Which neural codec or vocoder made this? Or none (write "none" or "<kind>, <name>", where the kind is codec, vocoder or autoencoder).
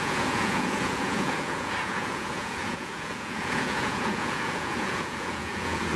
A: vocoder, Vocos